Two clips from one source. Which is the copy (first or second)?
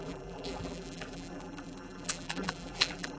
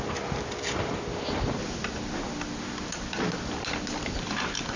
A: first